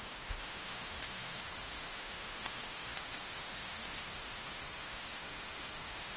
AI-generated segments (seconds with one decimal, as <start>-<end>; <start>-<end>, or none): 0.0-6.2